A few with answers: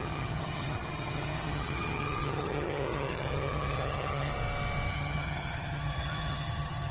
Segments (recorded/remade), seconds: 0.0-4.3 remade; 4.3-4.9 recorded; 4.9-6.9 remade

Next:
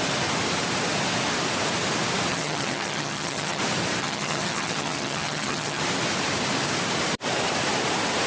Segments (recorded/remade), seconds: 0.0-2.3 recorded; 2.3-3.6 remade; 3.6-4.0 recorded; 4.0-5.8 remade; 5.8-8.3 recorded